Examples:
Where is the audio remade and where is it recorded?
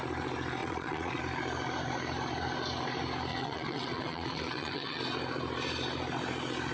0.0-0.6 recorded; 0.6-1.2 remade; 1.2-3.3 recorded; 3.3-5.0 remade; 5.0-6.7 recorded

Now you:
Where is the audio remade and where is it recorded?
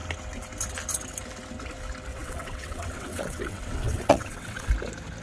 0.0-2.1 recorded; 2.1-4.7 remade; 4.7-5.2 recorded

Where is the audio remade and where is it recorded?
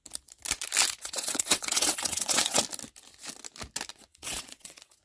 0.0-1.0 recorded; 1.0-2.6 remade; 2.6-3.9 recorded; 3.9-5.0 remade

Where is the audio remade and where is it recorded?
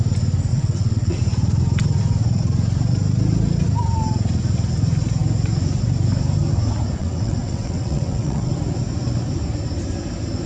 0.0-0.5 recorded; 0.5-1.2 remade; 1.2-7.0 recorded; 7.0-8.5 remade; 8.5-10.5 recorded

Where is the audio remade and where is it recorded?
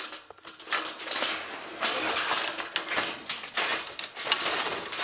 0.0-5.0 recorded